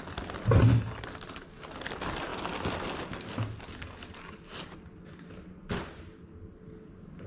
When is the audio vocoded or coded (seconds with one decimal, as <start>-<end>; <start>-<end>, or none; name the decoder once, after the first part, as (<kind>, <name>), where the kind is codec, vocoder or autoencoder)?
none